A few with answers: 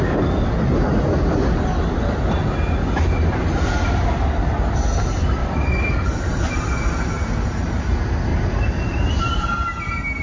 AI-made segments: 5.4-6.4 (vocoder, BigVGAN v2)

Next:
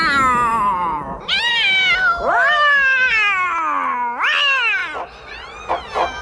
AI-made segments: 0.5-1.5 (vocoder, BigVGAN v2)

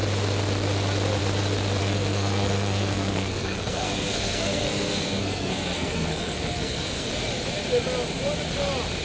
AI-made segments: 1.8-7.1 (codec, SNAC)

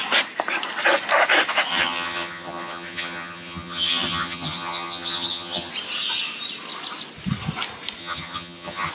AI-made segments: 1.7-5.7 (vocoder, HiFi-GAN); 8.0-8.9

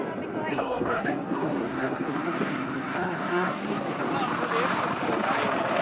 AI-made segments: 0.5-4.0 (codec, SNAC)

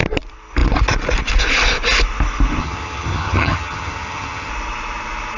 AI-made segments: 2.6-4.5 (vocoder, HiFi-GAN)